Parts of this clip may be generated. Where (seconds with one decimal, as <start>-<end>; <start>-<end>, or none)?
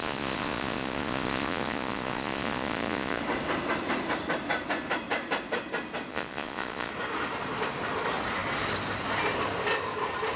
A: 0.0-3.2; 6.1-6.9